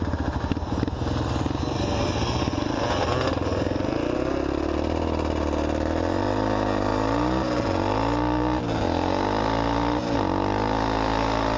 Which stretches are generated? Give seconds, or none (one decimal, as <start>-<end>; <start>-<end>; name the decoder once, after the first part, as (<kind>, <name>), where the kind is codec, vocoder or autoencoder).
none